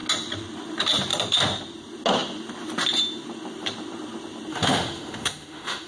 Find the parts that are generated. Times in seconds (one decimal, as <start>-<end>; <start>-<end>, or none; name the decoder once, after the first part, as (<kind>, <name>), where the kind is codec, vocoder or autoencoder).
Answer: 4.5-5.9 (autoencoder, DAC-VAE)